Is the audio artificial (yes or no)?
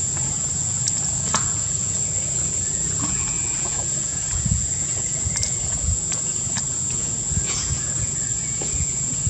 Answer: yes